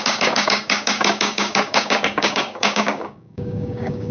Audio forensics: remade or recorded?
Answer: remade